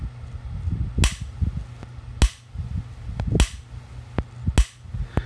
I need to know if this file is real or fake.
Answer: real